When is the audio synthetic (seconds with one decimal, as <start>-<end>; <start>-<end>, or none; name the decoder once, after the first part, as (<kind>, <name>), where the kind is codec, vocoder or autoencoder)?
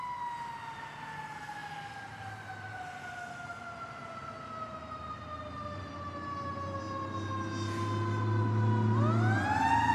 none